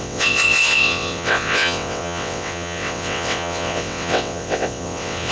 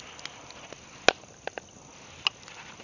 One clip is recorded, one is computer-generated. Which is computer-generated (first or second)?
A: first